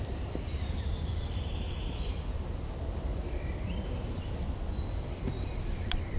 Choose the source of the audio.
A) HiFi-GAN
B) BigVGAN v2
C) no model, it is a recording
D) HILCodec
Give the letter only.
B